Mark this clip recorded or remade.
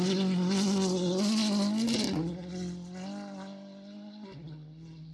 recorded